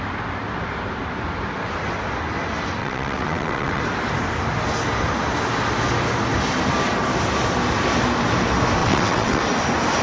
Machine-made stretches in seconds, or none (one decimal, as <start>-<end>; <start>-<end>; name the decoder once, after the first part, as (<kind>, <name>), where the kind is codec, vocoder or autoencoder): 2.8-3.8 (vocoder, WaveNeXt); 8.8-9.4